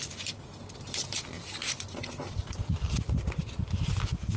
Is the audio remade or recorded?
recorded